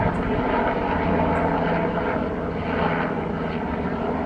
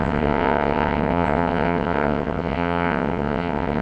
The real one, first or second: first